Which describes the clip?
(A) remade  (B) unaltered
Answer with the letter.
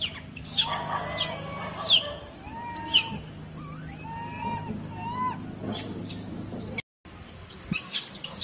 B